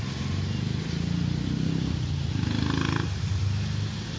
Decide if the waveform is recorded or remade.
recorded